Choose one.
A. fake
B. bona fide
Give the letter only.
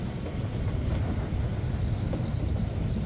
B